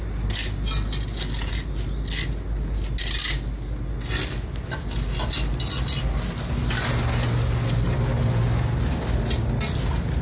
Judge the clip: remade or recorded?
recorded